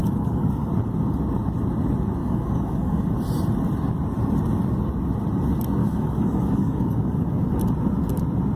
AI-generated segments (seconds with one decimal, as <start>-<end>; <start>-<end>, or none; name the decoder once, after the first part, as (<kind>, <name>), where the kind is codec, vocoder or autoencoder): 0.0-0.7 (codec, DAC); 2.2-3.1; 5.8-7.6